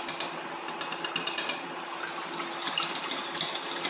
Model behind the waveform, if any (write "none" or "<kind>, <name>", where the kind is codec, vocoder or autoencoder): vocoder, BigVGAN v2